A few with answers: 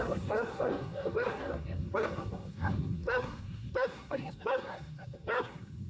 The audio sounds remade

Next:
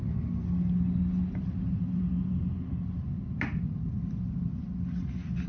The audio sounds recorded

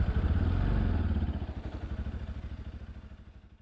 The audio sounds recorded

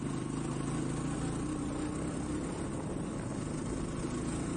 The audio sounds recorded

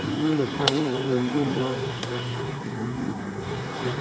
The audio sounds remade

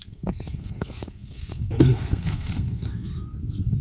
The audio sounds remade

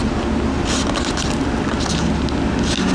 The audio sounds recorded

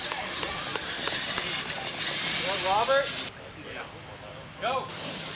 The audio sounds recorded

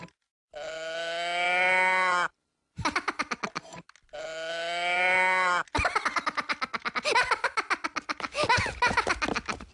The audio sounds recorded